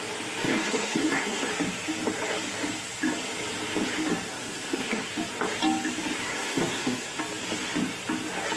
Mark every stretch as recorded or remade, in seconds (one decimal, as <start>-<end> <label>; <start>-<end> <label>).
0.0-0.4 recorded; 0.4-1.5 remade; 1.5-4.3 recorded; 4.3-5.1 remade; 5.1-6.2 recorded; 6.2-7.2 remade; 7.2-8.6 recorded